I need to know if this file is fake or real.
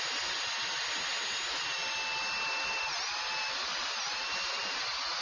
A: real